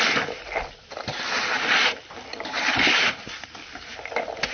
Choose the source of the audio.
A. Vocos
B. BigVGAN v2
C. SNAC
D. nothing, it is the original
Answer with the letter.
D